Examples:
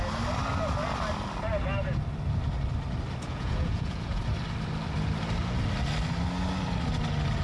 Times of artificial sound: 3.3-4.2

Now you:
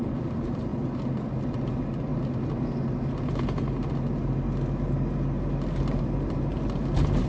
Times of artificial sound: none

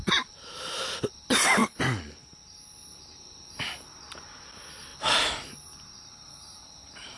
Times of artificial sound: none

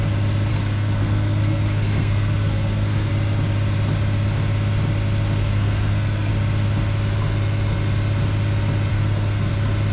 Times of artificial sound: 0.5-3.1; 5.4-6.3; 8.9-9.5

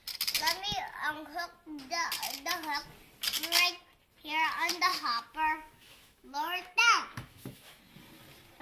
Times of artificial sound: 4.9-7.8

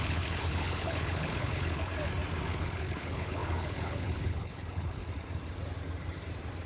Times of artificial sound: 0.0-1.9; 2.5-5.0

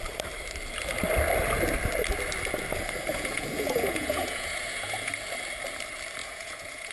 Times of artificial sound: 3.1-5.1; 6.2-6.9

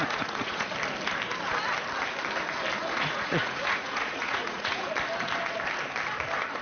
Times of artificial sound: 0.0-0.7; 2.8-4.9